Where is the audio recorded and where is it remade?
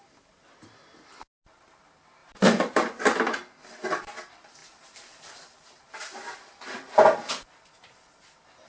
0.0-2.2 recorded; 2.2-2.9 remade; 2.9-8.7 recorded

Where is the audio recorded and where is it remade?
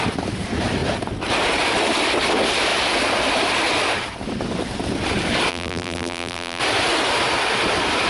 0.0-5.5 recorded; 5.5-6.6 remade; 6.6-8.1 recorded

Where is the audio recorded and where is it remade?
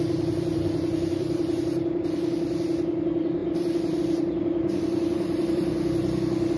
0.0-6.6 remade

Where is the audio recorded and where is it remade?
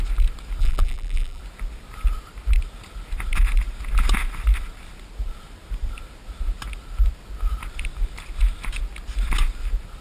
0.0-0.6 recorded; 0.6-1.4 remade; 1.4-10.0 recorded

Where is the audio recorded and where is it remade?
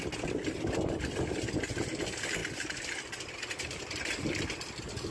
0.0-2.4 recorded; 2.4-4.4 remade; 4.4-5.1 recorded